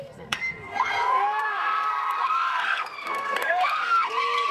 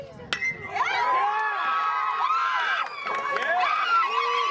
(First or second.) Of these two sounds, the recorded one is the second